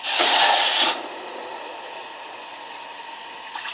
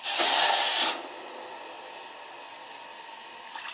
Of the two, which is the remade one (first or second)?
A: first